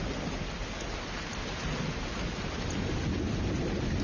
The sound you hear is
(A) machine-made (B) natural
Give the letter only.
B